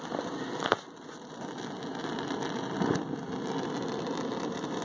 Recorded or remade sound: recorded